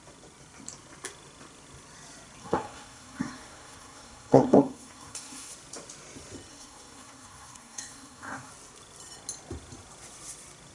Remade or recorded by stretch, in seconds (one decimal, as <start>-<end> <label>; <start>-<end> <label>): 0.0-2.4 recorded; 2.4-5.5 remade; 5.5-6.5 recorded; 6.5-8.5 remade; 8.5-10.7 recorded

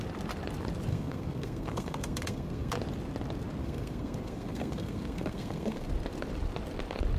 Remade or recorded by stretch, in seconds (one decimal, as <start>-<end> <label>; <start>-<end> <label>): 0.0-0.9 recorded; 0.9-2.7 remade; 2.7-3.6 recorded; 3.6-5.9 remade; 5.9-7.2 recorded

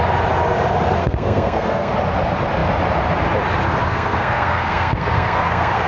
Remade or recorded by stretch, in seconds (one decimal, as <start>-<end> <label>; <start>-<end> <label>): 0.0-1.0 recorded; 1.0-1.9 remade; 1.9-3.9 recorded; 3.9-5.9 remade

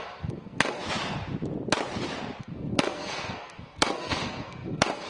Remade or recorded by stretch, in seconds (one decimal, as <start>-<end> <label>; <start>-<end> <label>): 0.0-0.8 remade; 0.8-2.4 recorded; 2.4-5.1 remade

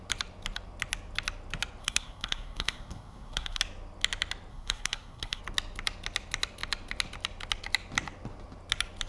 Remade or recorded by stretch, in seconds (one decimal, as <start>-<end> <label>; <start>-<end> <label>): 0.0-1.8 recorded; 1.8-3.6 remade; 3.6-4.5 recorded; 4.5-5.4 remade; 5.4-9.1 recorded

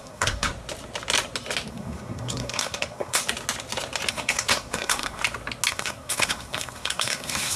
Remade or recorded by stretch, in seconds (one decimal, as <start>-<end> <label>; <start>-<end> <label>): 0.0-0.5 remade; 0.5-1.7 recorded; 1.7-3.2 remade; 3.2-4.1 recorded; 4.1-5.2 remade; 5.2-5.7 recorded; 5.7-7.6 remade

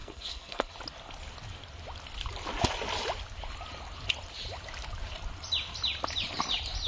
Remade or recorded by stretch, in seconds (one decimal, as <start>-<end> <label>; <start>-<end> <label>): 0.0-0.7 remade; 0.7-6.9 recorded

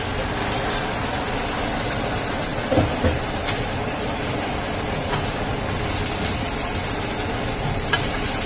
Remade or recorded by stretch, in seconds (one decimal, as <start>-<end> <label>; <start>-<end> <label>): 0.0-8.5 recorded